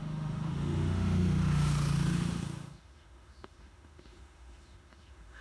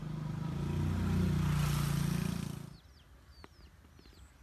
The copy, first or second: first